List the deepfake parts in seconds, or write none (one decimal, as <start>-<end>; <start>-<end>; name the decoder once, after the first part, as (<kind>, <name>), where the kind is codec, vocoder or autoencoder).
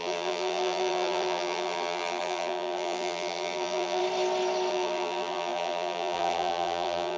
0.0-4.0 (vocoder, BigVGAN v2); 4.7-7.2